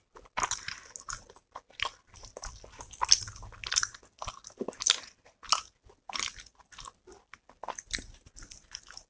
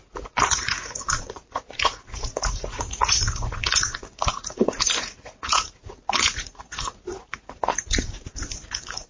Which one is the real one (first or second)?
first